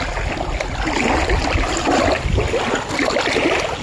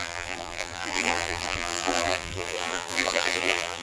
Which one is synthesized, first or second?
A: second